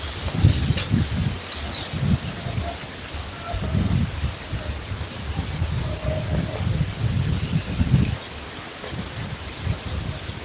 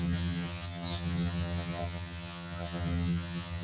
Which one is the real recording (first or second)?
first